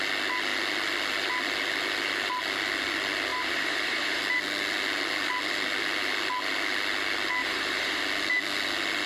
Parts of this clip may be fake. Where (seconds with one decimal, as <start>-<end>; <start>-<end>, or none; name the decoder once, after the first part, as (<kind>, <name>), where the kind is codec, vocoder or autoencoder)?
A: 3.3-4.2 (vocoder, BigVGAN v2); 7.4-8.0